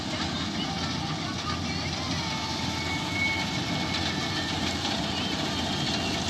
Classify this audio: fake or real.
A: real